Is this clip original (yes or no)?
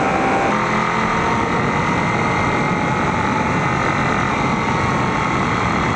yes